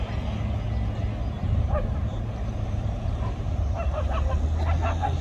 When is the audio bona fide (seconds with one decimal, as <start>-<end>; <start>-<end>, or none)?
0.0-1.4; 4.3-5.2